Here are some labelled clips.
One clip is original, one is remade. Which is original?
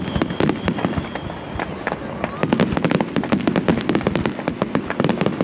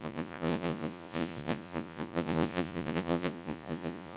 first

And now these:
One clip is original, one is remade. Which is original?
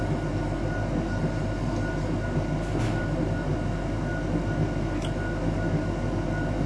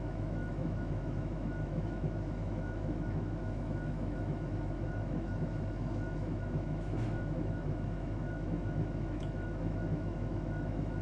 first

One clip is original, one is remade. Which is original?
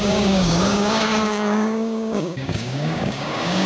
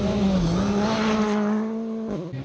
second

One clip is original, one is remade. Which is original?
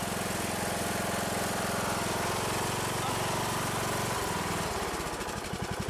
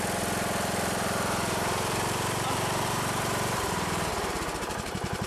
first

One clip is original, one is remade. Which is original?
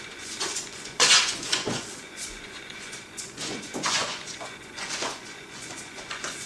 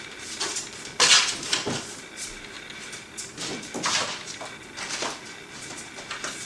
second